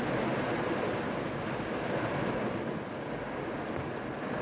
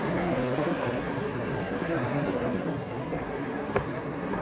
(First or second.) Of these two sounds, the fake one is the second